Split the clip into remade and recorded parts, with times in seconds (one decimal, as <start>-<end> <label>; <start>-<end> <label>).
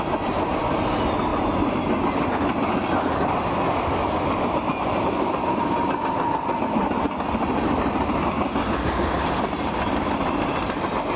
0.0-11.2 recorded